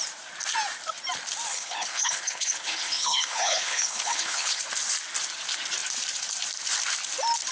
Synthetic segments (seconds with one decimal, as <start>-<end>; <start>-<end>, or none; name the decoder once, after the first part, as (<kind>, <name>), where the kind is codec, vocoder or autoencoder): 1.5-4.6 (codec, HILCodec)